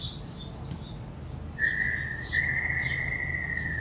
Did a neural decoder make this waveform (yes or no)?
no